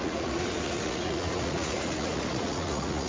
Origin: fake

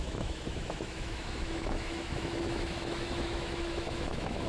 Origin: fake